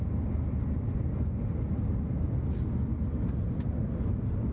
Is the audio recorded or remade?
recorded